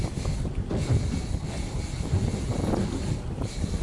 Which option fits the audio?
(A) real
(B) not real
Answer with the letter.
A